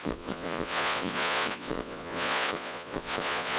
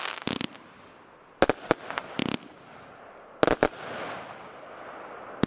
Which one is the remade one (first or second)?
first